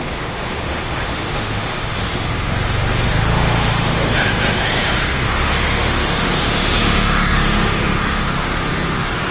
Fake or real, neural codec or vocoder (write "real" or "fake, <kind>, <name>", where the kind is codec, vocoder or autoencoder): fake, autoencoder, DAC-VAE